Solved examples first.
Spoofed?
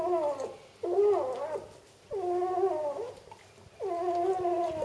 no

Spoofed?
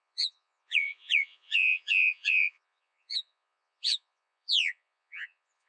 yes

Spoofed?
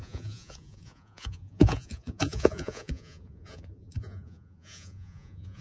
yes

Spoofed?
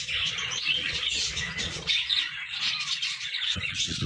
yes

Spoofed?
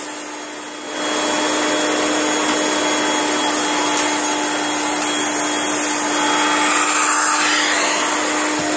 no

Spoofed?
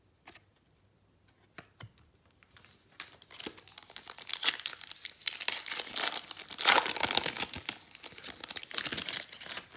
no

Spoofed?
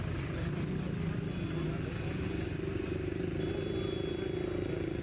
no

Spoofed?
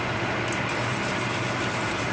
no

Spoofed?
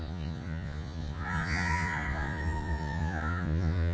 yes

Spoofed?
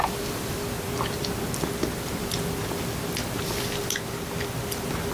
no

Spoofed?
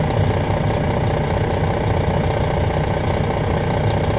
no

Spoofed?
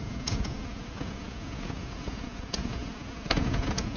yes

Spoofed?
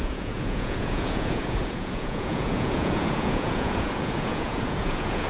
yes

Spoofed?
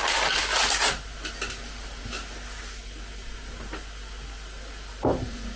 no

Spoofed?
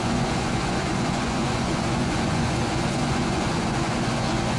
yes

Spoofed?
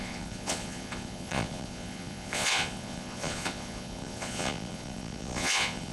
yes